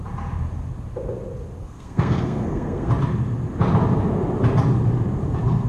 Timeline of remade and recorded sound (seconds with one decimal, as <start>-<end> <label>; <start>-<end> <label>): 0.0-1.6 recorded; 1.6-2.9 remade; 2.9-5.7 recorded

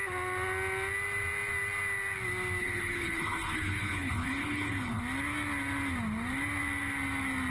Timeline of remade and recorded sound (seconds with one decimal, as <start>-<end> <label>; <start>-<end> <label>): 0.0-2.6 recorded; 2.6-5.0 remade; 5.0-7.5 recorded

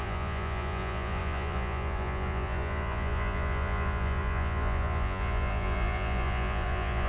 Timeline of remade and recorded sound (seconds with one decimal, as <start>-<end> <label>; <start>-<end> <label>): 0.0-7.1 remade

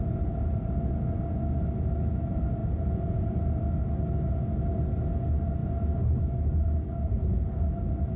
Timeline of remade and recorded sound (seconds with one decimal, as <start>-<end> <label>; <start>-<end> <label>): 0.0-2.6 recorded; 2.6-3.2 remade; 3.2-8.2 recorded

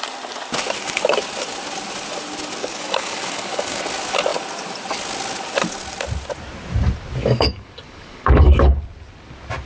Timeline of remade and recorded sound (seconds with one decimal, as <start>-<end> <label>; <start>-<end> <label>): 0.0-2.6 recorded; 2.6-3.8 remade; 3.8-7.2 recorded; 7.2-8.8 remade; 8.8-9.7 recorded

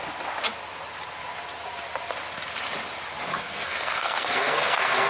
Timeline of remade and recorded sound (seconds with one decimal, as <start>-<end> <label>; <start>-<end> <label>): 0.0-3.3 recorded; 3.3-5.1 remade

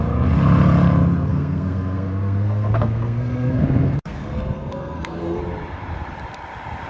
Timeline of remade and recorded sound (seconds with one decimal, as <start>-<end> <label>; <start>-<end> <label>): 0.0-1.3 recorded; 1.3-5.4 remade; 5.4-6.9 recorded